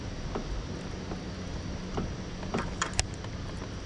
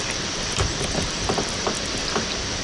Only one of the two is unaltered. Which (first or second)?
first